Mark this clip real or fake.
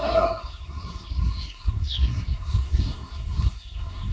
fake